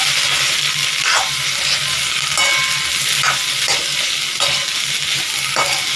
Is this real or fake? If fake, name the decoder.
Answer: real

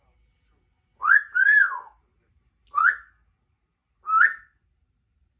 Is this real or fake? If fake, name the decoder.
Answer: real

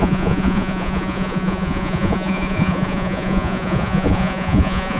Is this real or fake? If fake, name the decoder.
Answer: fake, vocoder, Vocos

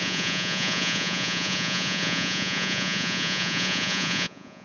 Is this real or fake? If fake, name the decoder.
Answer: fake, vocoder, Vocos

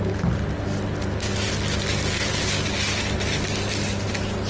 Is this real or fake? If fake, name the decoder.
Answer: real